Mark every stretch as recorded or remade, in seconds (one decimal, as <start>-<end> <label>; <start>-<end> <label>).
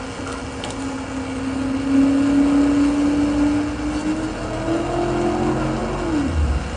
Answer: 0.0-6.8 recorded